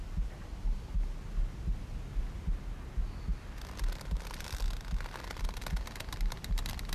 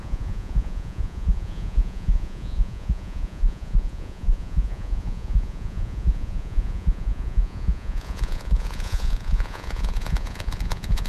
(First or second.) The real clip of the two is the first